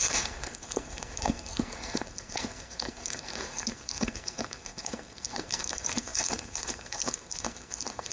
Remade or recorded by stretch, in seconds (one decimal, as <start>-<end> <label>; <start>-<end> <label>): 0.0-8.1 remade